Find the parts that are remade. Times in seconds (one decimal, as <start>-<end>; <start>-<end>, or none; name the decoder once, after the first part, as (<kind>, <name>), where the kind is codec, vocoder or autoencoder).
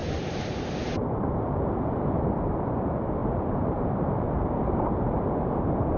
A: 0.0-2.5 (vocoder, BigVGAN v2); 3.2-5.6